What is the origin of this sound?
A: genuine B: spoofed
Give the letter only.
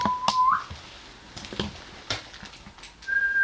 A